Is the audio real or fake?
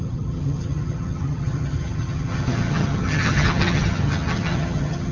fake